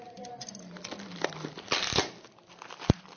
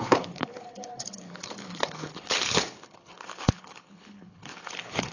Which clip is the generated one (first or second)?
second